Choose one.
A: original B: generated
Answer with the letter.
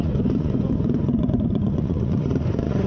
B